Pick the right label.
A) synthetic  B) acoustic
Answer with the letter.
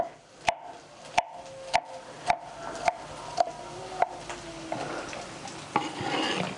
B